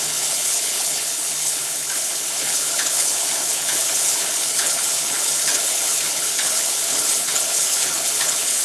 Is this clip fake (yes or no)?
yes